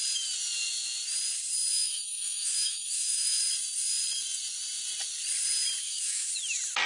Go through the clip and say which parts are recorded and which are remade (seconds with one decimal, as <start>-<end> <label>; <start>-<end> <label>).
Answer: 0.0-1.7 recorded; 1.7-3.4 remade; 3.4-5.8 recorded; 5.8-6.3 remade; 6.3-6.9 recorded